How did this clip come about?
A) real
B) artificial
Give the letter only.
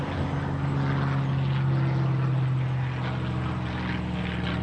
A